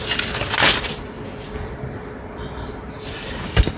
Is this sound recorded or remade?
recorded